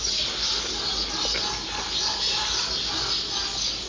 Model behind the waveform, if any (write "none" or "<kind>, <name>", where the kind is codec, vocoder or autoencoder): none